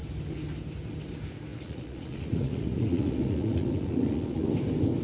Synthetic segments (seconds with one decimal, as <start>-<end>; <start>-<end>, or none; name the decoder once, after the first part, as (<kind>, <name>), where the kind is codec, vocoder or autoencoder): 1.5-4.5 (vocoder, Vocos)